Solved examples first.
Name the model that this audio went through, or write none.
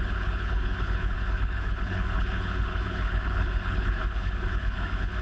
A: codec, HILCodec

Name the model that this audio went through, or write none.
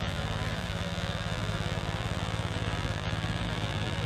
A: vocoder, BigVGAN v2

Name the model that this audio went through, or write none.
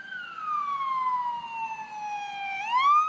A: none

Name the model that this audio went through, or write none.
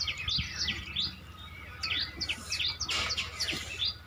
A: none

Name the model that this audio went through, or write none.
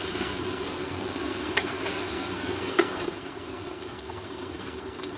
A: codec, SNAC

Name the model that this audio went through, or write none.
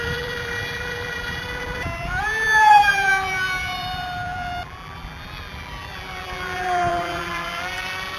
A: vocoder, BigVGAN v2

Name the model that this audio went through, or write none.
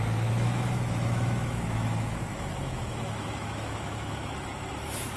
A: autoencoder, DAC-VAE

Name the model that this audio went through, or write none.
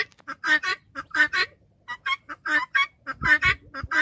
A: none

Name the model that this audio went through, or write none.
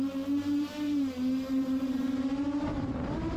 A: vocoder, BigVGAN v2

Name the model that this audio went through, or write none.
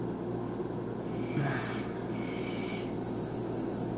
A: none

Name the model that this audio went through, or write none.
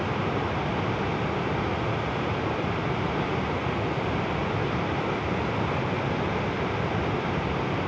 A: none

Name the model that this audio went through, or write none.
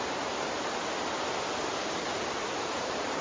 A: none